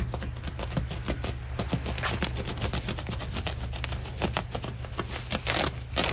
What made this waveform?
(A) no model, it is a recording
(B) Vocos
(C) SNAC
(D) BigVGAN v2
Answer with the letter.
A